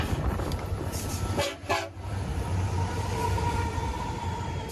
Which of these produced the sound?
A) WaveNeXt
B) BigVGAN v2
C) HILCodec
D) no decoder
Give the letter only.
B